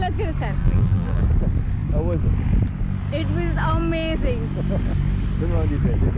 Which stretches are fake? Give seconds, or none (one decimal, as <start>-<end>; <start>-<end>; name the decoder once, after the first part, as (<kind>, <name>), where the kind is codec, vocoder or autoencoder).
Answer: 0.6-1.2 (vocoder, BigVGAN v2)